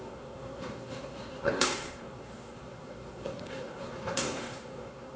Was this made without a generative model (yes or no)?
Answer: no